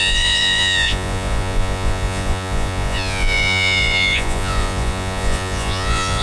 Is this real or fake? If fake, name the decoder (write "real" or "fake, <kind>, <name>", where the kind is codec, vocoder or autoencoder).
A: fake, vocoder, Vocos